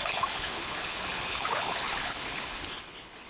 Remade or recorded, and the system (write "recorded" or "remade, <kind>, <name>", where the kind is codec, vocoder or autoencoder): remade, codec, HILCodec